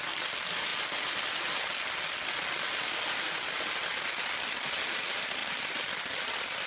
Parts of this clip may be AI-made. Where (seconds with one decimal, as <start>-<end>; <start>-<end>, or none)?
none